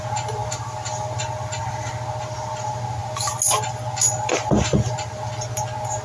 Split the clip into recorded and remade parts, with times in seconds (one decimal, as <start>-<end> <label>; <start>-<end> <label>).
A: 0.0-6.0 recorded